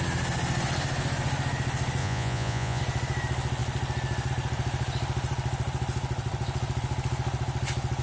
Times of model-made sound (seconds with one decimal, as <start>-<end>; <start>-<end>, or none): 2.0-2.8